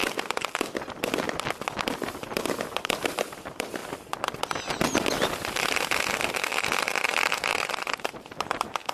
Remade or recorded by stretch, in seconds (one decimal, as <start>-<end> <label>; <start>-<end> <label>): 0.0-2.4 recorded; 2.4-3.8 remade; 3.8-6.6 recorded; 6.6-8.9 remade